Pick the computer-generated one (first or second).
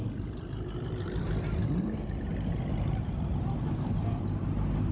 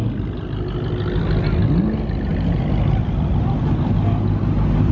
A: first